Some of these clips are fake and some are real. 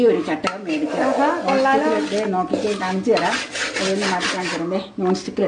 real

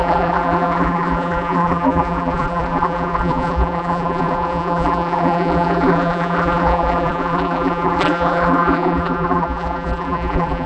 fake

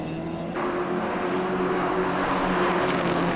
real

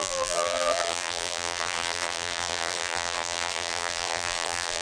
fake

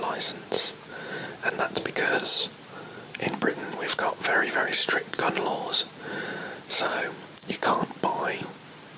fake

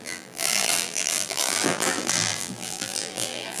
fake